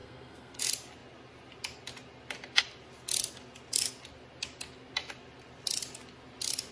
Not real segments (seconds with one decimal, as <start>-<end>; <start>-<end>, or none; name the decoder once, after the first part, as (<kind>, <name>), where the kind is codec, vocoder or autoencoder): 0.0-0.6 (codec, SNAC)